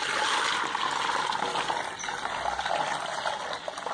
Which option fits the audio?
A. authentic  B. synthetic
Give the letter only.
A